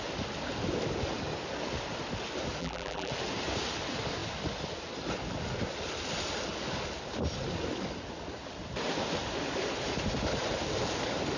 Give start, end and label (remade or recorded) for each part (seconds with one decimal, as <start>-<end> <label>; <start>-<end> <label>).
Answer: 0.0-2.6 recorded; 2.6-3.1 remade; 3.1-11.4 recorded